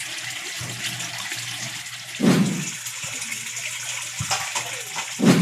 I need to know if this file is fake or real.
real